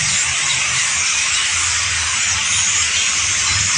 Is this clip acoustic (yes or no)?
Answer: yes